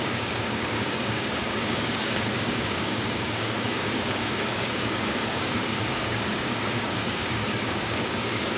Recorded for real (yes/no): no